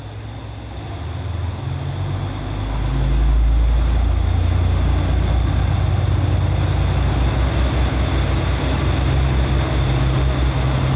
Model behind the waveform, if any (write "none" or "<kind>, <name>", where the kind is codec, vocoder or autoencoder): none